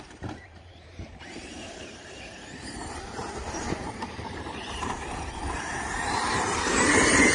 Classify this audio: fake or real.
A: fake